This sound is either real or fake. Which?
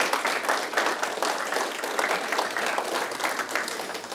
real